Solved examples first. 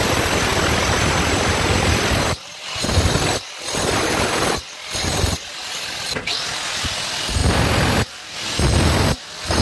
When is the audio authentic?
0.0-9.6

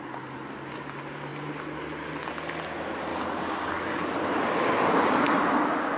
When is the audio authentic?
0.0-3.1; 4.1-6.0

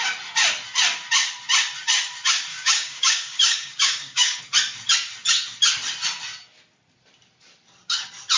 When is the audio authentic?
0.0-2.5; 4.4-8.4

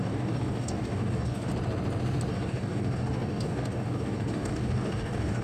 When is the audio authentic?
1.5-2.3

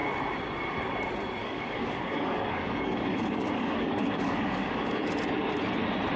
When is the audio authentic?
0.0-1.4; 5.1-6.2

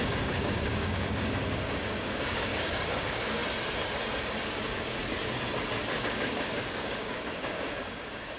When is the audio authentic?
3.4-4.4; 5.0-6.0

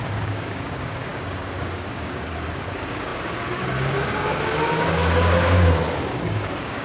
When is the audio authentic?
none

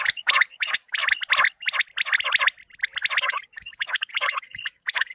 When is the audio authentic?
1.0-3.2